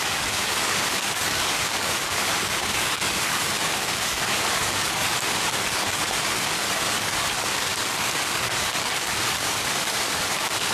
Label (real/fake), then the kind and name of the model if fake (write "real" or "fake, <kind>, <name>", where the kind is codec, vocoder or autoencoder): fake, codec, DAC